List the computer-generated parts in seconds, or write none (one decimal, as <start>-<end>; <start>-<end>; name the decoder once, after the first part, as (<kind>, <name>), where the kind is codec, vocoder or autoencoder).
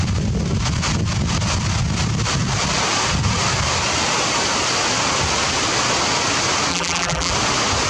6.7-7.3 (vocoder, BigVGAN v2)